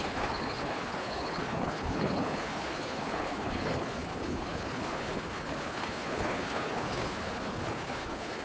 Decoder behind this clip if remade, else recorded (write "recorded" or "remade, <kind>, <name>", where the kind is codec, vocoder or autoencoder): remade, codec, HILCodec